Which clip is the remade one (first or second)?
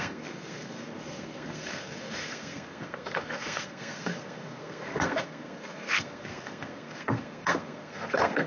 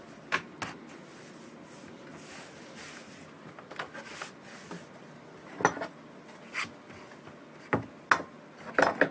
first